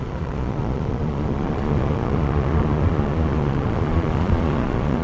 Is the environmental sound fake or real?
fake